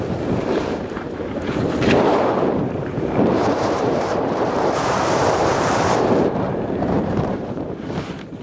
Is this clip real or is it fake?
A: fake